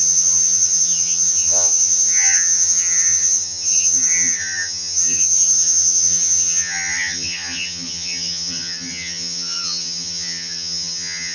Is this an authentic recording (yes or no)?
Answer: no